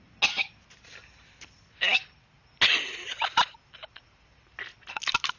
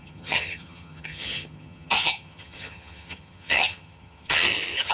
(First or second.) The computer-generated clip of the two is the second